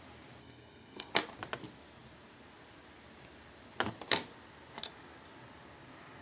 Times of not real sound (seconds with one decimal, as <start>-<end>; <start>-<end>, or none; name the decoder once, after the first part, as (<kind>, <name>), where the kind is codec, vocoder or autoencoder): 0.4-1.1 (codec, SNAC)